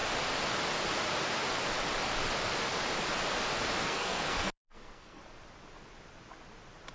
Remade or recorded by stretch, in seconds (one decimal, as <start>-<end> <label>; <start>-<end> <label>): 0.0-3.8 recorded; 3.8-5.2 remade; 5.2-6.9 recorded